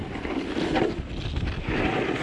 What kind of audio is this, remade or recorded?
recorded